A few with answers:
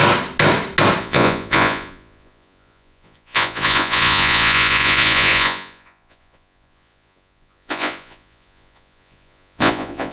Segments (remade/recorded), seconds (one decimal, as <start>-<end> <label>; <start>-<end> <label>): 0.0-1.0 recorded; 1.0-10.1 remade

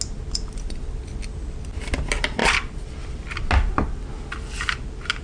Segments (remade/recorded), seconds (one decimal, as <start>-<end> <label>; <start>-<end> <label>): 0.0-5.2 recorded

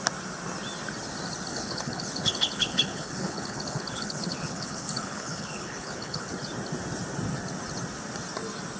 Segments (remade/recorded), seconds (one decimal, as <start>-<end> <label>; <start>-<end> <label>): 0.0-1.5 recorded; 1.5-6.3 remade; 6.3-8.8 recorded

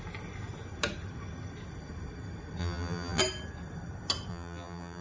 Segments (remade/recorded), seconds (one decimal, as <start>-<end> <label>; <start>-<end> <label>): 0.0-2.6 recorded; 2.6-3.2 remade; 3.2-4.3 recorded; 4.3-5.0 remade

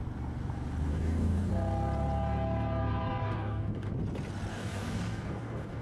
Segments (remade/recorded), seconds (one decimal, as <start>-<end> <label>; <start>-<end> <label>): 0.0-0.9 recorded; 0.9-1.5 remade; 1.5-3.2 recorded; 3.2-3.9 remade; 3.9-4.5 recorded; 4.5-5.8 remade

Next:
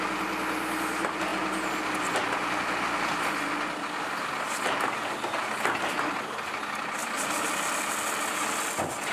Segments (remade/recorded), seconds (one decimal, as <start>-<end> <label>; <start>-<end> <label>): 0.0-9.1 recorded

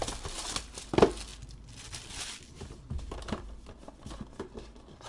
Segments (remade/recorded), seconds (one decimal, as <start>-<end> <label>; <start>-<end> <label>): 0.0-5.1 recorded